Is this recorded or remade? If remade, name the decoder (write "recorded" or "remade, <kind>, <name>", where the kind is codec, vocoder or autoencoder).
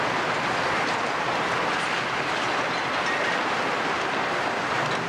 recorded